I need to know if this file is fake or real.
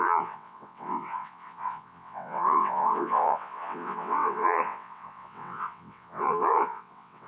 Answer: fake